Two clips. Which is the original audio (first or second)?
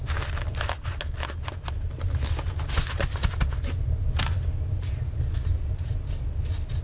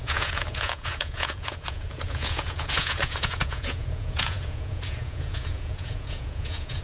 first